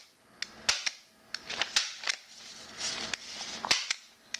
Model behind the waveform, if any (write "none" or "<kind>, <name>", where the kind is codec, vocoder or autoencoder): none